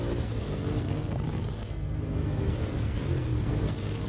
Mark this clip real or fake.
fake